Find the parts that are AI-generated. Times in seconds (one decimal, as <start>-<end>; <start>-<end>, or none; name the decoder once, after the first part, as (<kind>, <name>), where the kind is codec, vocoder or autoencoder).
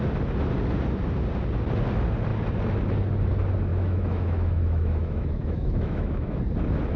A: 3.7-6.4 (autoencoder, DAC-VAE)